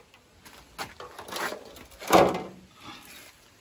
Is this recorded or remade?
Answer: recorded